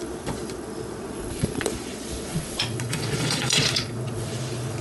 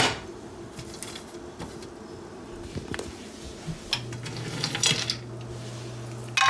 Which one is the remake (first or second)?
first